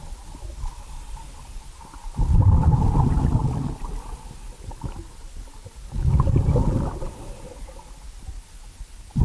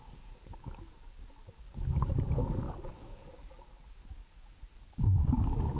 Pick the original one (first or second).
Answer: first